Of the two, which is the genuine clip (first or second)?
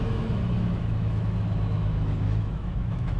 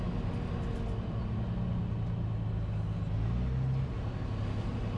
second